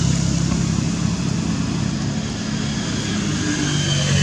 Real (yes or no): yes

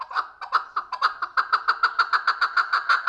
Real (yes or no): yes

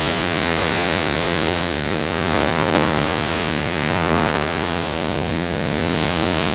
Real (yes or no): no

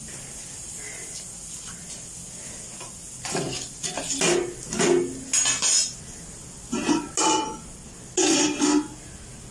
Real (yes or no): yes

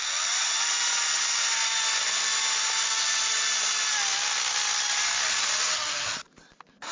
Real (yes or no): yes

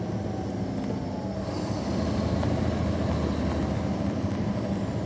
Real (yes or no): yes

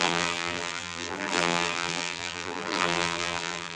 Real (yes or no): no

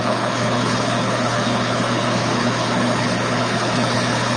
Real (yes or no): no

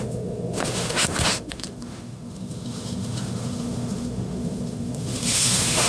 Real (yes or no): no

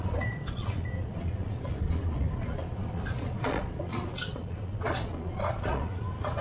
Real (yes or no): no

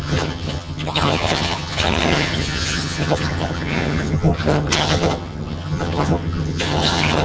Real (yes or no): no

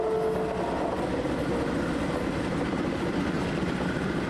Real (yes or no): yes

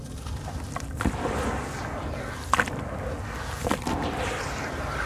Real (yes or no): yes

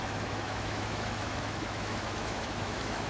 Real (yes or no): no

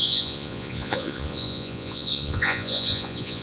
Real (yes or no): no